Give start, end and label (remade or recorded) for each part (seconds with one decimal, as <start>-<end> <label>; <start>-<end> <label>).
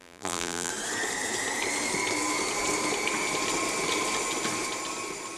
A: 0.0-0.7 remade; 0.7-5.4 recorded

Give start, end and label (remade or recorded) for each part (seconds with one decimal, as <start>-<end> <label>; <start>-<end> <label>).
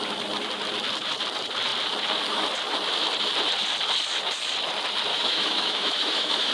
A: 0.0-5.1 recorded; 5.1-6.5 remade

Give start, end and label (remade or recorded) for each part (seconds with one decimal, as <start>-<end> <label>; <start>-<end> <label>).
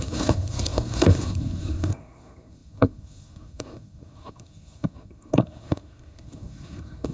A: 0.0-7.1 remade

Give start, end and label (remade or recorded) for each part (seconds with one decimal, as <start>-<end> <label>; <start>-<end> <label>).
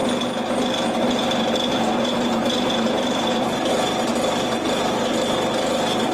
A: 0.0-6.1 recorded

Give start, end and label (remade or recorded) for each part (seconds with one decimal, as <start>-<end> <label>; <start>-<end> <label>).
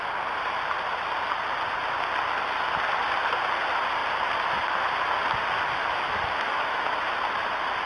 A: 0.0-5.8 recorded; 5.8-6.8 remade; 6.8-7.9 recorded